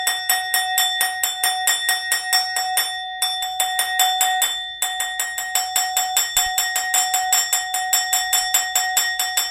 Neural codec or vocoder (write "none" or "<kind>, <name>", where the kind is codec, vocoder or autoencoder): none